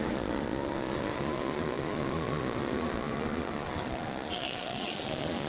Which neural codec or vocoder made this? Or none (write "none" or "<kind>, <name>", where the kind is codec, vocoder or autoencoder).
vocoder, Vocos